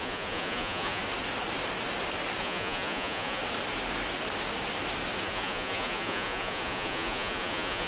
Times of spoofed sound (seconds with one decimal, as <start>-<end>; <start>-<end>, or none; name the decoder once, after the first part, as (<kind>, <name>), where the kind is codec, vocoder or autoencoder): 0.0-1.0 (vocoder, Vocos); 2.4-3.4; 5.2-7.9